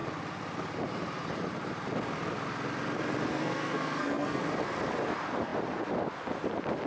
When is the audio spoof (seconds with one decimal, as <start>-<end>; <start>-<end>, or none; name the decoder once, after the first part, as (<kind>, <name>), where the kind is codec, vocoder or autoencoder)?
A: 3.3-4.4 (codec, SNAC)